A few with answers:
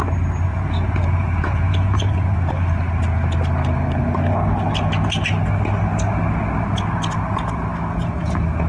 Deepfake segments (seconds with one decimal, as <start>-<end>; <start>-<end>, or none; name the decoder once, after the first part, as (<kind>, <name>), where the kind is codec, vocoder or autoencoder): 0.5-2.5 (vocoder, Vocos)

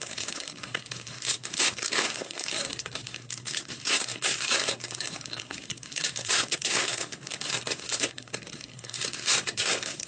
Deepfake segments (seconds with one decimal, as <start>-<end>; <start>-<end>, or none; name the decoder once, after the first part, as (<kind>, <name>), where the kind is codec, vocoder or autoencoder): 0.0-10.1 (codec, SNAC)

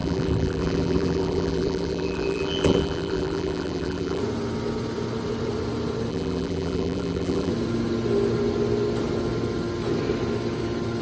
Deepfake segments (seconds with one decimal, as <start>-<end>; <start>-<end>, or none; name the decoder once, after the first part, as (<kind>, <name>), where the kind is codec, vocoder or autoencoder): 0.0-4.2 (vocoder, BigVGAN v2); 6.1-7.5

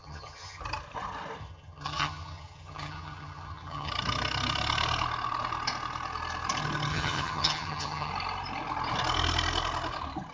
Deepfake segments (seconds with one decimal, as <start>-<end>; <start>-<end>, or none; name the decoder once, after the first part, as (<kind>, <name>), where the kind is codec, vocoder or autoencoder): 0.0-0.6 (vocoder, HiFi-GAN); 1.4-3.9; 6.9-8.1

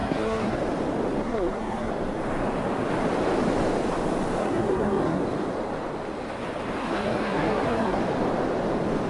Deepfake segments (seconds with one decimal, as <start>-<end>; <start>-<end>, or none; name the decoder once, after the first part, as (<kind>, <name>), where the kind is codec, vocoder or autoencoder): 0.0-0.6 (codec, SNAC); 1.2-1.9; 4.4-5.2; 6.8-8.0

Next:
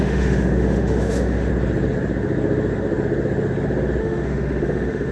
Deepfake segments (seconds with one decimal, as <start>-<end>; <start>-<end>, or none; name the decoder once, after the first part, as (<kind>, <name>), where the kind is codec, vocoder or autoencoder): 0.0-1.5 (autoencoder, DAC-VAE); 4.0-5.1